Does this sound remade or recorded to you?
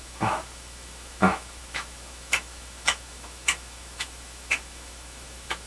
remade